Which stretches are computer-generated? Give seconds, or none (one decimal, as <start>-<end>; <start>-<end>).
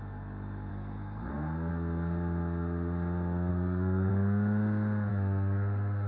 0.7-1.7; 3.5-4.1; 5.1-6.1